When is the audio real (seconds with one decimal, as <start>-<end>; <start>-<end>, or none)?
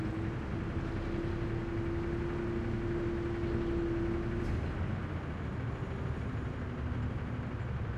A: 0.0-8.0